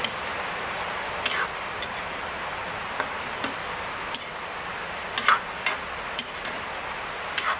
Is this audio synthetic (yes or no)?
no